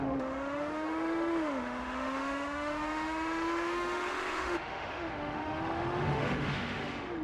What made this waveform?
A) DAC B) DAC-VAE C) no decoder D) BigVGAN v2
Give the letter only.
B